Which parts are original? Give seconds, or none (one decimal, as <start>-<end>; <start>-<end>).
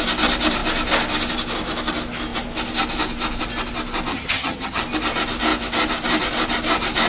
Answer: 0.0-4.1; 4.8-7.1